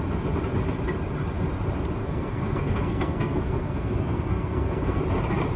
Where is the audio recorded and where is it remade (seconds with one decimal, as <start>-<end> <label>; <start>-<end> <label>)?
0.0-2.0 recorded; 2.0-5.0 remade; 5.0-5.6 recorded